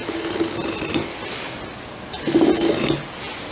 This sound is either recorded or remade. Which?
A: recorded